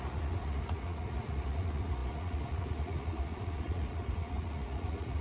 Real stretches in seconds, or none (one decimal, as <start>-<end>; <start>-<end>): none